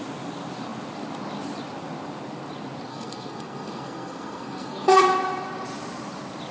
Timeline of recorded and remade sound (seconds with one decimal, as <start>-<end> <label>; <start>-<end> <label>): 0.0-2.9 recorded; 2.9-5.0 remade; 5.0-6.5 recorded